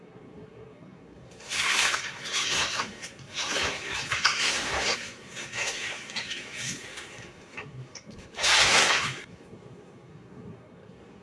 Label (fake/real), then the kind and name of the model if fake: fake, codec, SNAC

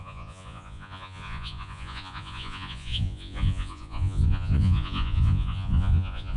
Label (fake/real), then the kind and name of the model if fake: fake, vocoder, Vocos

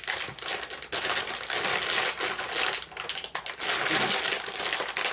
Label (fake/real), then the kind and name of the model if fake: real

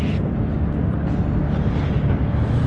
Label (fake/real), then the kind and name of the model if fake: real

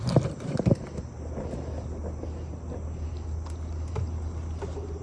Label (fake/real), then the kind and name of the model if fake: real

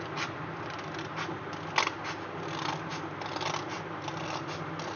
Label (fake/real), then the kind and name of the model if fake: real